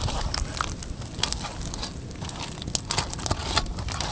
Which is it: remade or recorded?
recorded